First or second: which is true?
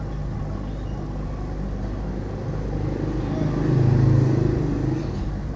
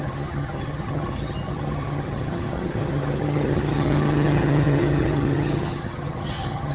first